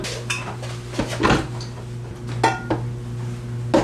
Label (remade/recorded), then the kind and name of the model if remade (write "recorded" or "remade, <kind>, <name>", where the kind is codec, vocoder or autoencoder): recorded